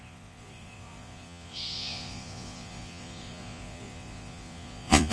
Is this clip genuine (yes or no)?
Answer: no